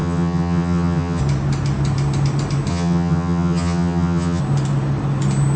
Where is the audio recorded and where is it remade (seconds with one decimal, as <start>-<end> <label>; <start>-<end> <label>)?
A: 0.0-1.2 remade; 1.2-2.7 recorded; 2.7-4.4 remade; 4.4-5.6 recorded